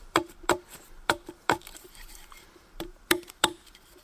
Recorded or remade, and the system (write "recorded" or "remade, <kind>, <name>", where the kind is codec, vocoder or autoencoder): remade, vocoder, BigVGAN v2